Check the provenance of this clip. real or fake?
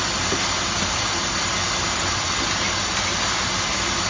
real